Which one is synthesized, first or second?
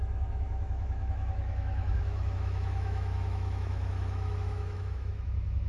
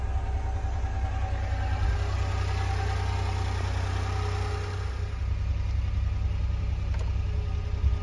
first